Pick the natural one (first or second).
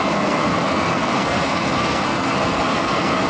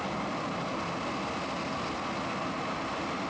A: second